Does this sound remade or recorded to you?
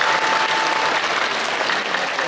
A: recorded